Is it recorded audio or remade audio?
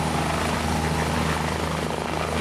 recorded